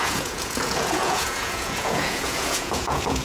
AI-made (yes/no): yes